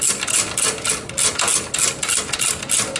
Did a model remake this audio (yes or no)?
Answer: no